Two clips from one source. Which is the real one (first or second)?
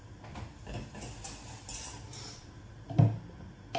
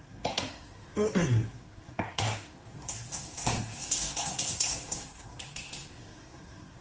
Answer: first